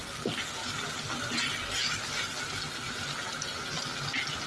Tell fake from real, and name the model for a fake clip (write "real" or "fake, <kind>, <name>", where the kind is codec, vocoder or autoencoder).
real